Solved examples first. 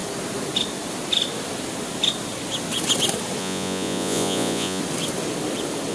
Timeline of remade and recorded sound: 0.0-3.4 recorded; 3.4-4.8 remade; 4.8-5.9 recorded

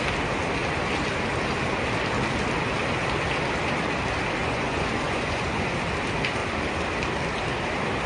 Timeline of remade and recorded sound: 0.0-4.4 recorded; 4.4-5.7 remade; 5.7-8.1 recorded